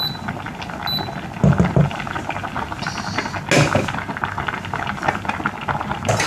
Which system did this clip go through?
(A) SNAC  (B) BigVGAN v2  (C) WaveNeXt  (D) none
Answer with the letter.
D